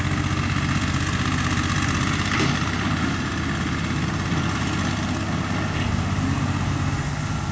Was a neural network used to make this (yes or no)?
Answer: no